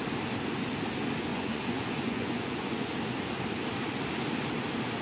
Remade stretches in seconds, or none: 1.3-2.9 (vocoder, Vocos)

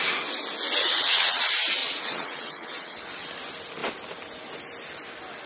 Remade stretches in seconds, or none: 0.8-1.4 (vocoder, WaveNeXt); 1.8-3.3

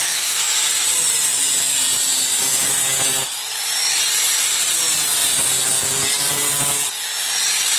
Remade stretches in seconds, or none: 0.0-0.6 (codec, SNAC)

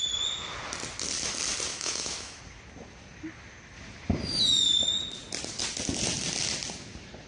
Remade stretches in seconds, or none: 1.7-2.4 (autoencoder, DAC-VAE)